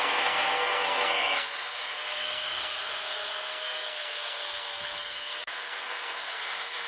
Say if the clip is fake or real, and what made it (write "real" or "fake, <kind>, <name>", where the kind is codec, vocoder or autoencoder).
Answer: fake, codec, SNAC